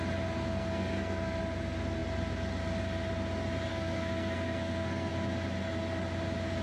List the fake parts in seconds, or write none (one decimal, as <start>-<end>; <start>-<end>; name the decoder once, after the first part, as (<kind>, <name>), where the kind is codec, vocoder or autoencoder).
0.4-1.4 (codec, SNAC); 3.7-5.1